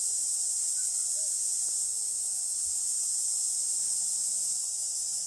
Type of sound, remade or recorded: recorded